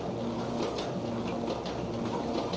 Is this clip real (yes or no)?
yes